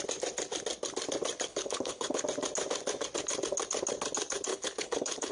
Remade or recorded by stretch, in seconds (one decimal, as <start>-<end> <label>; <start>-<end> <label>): 0.0-1.5 recorded; 1.5-2.2 remade; 2.2-4.5 recorded; 4.5-5.3 remade